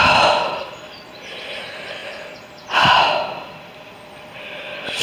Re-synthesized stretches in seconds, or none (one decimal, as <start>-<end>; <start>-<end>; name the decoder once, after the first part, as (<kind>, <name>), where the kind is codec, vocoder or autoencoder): none